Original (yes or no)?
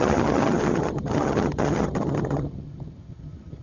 no